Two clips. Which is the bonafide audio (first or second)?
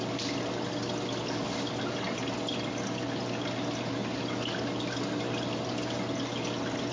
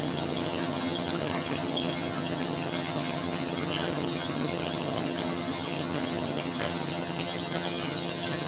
first